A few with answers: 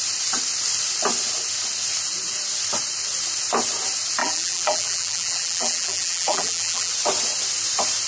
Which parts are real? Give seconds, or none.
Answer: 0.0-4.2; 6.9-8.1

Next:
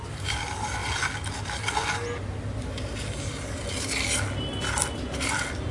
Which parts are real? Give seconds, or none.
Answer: 0.0-5.7